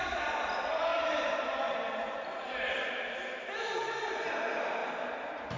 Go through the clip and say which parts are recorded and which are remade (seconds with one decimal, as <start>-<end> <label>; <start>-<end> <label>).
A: 0.0-0.9 recorded; 0.9-4.3 remade; 4.3-4.8 recorded; 4.8-5.6 remade